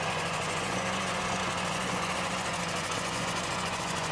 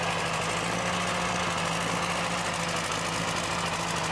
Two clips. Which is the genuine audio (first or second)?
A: second